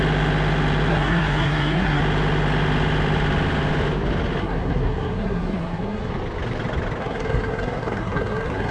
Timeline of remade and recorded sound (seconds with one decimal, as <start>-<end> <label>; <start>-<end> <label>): 0.0-0.9 recorded; 0.9-2.0 remade; 2.0-4.4 recorded; 4.4-6.1 remade; 6.1-7.0 recorded; 7.0-8.7 remade